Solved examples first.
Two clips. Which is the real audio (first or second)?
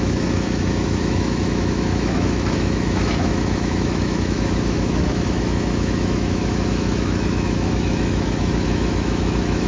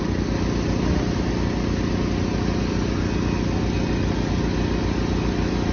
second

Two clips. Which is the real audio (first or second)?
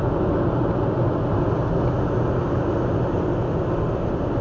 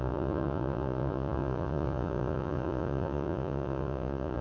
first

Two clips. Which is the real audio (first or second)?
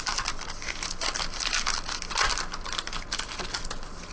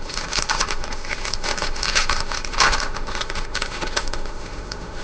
first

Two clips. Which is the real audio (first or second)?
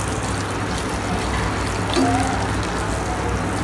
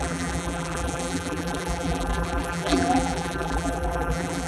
first